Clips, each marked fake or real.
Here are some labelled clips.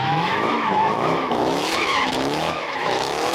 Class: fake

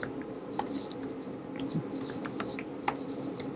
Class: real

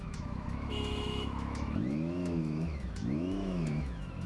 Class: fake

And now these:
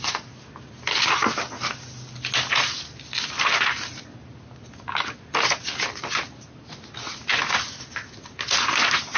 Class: real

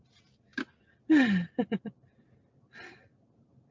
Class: real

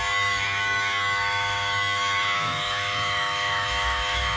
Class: fake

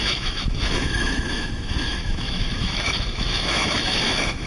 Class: fake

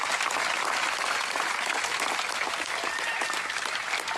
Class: real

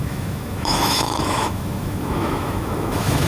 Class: fake